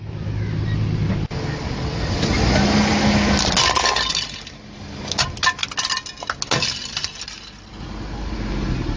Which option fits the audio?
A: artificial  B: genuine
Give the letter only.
B